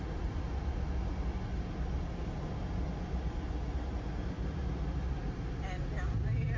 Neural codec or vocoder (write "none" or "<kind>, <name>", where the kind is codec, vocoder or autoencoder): none